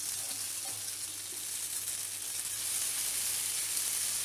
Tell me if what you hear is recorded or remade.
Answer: recorded